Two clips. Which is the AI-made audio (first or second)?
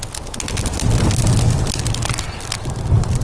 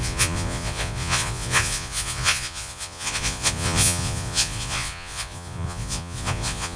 second